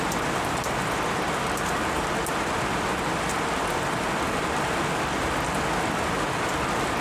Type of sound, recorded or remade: recorded